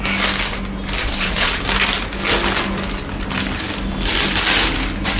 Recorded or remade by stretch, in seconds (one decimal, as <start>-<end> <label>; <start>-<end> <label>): 0.0-1.0 recorded; 1.0-1.5 remade; 1.5-5.2 recorded

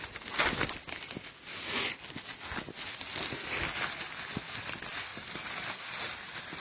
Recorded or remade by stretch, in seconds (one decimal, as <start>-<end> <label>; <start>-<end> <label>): 0.0-6.6 recorded